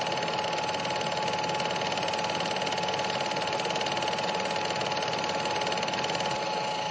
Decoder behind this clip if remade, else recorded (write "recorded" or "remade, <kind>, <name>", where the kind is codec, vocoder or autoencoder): recorded